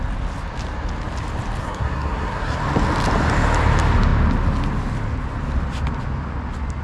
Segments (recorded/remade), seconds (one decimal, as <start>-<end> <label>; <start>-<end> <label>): 0.0-1.6 recorded; 1.6-2.6 remade; 2.6-6.8 recorded